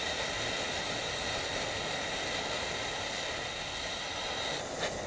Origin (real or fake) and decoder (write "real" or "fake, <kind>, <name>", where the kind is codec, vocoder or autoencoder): real